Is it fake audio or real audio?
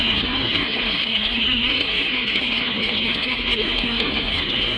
fake